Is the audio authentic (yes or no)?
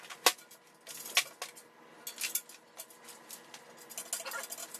yes